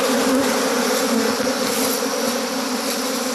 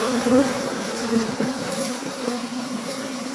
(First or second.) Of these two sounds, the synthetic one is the second